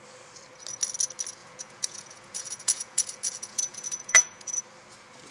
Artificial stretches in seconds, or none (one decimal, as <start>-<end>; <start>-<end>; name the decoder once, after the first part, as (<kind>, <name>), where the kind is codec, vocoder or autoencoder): 1.4-4.6 (vocoder, Vocos)